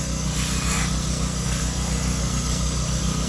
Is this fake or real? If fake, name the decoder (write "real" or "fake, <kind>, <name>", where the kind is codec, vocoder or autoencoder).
fake, codec, SNAC